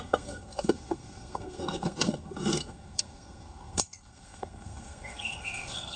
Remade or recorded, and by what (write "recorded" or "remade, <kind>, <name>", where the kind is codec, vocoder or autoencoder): remade, codec, SNAC